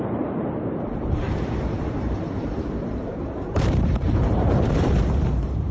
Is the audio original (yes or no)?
no